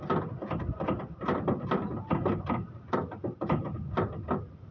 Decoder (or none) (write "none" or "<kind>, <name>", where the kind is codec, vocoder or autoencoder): none